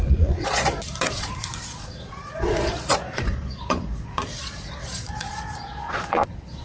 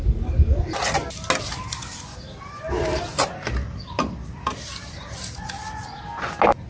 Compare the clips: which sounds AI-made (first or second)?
first